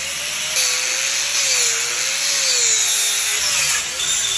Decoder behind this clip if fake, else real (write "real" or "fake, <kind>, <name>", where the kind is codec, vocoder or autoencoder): real